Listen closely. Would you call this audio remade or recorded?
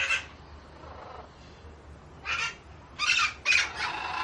recorded